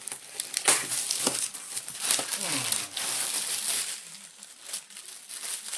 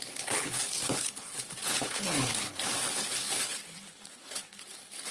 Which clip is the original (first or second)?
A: first